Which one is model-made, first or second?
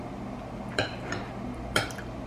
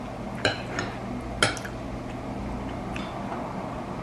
first